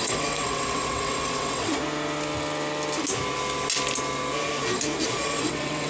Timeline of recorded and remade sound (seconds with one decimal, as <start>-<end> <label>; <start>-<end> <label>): 0.0-1.7 remade; 1.7-5.2 recorded; 5.2-5.9 remade